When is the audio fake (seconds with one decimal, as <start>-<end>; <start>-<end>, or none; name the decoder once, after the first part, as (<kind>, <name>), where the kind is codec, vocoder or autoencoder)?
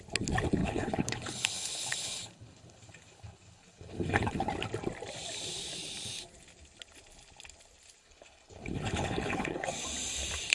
0.6-4.5 (codec, HILCodec); 8.0-9.7